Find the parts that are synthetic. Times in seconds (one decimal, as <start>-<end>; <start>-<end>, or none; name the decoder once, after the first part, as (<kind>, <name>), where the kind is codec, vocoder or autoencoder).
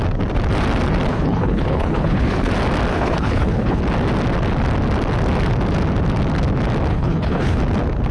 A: 1.1-2.5 (codec, HILCodec); 2.9-3.8; 6.9-7.6